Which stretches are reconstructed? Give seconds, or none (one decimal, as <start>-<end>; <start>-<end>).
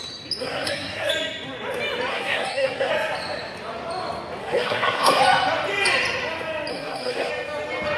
0.4-1.1; 2.1-2.9; 4.4-5.2; 6.7-7.3